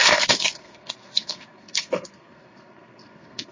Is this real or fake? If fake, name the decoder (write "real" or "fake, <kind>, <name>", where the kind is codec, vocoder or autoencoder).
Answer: fake, codec, SNAC